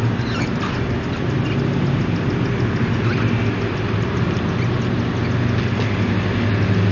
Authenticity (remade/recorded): recorded